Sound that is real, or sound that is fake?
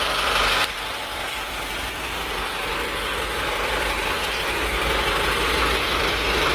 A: real